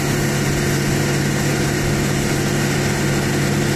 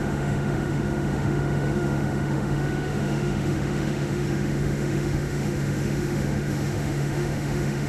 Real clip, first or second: first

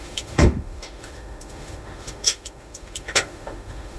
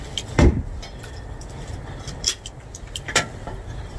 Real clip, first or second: second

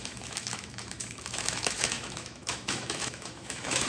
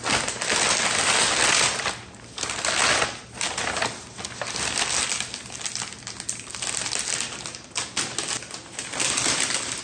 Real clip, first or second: second